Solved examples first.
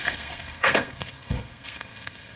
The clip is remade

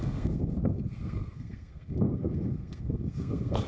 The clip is remade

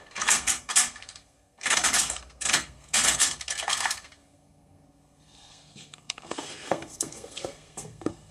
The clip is remade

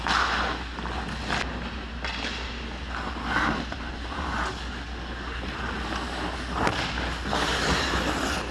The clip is recorded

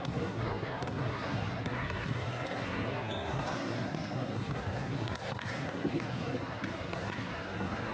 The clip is remade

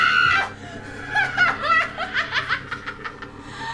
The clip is recorded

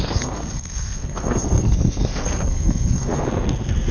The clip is remade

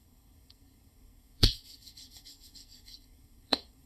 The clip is remade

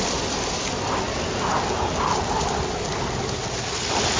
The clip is recorded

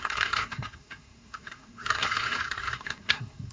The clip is remade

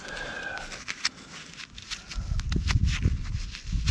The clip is recorded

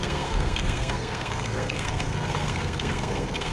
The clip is remade